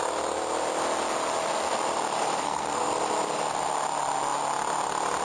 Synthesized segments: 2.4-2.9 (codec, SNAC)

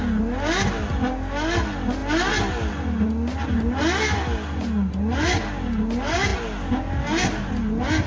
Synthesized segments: none

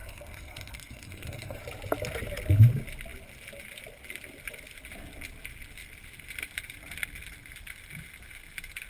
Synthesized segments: 0.0-1.6 (codec, SNAC)